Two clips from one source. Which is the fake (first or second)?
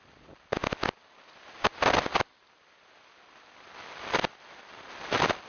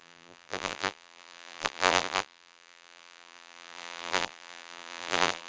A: second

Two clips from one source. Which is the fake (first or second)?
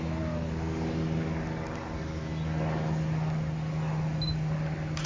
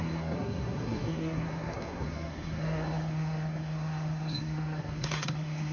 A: second